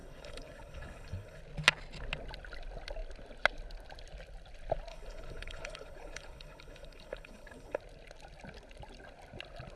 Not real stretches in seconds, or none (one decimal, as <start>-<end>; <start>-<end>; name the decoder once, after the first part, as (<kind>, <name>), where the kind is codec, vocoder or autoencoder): 0.0-1.4 (codec, HILCodec); 4.9-7.8